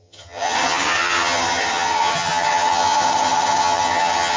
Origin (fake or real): fake